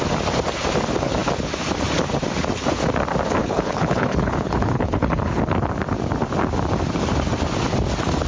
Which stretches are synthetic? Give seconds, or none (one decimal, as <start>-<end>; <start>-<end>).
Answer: 3.4-5.4